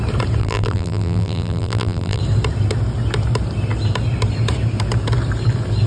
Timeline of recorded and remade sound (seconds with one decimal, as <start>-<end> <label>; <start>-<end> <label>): 0.0-0.4 recorded; 0.4-2.2 remade; 2.2-5.9 recorded